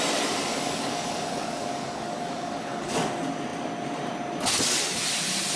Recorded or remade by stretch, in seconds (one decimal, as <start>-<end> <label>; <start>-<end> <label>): 0.0-0.5 recorded; 0.5-3.1 remade; 3.1-5.6 recorded